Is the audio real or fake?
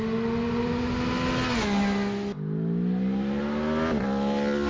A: real